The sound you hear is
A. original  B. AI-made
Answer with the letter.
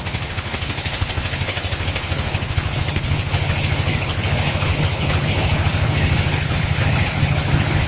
B